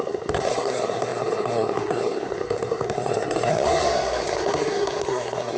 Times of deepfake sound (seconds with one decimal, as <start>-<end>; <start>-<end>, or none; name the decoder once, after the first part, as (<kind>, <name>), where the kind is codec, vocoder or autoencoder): 0.0-5.6 (codec, SNAC)